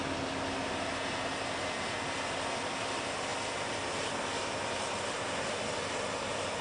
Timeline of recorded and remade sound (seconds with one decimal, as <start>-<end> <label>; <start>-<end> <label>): 0.0-6.6 recorded